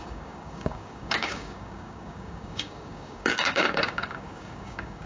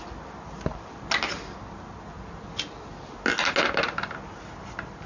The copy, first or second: first